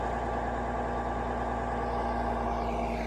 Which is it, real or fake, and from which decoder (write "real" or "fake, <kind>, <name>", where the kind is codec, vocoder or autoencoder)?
real